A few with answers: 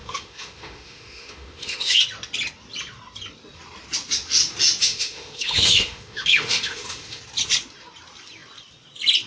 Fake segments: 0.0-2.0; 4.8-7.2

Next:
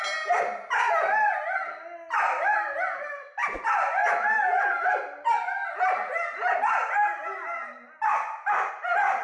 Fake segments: none

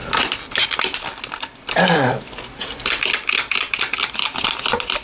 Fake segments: 0.0-3.0

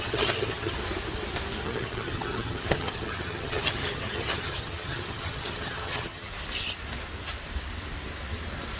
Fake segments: 0.0-0.8; 1.6-6.3